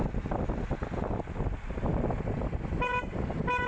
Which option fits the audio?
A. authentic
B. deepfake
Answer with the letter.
A